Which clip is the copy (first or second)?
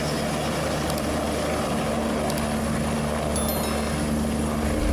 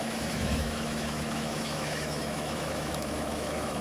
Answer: second